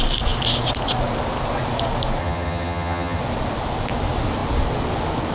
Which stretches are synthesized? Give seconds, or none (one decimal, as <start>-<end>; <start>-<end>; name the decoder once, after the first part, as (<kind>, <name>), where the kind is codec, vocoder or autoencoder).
2.2-3.2 (vocoder, HiFi-GAN)